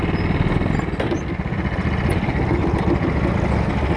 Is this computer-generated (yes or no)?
no